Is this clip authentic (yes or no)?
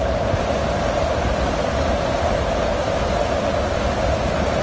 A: yes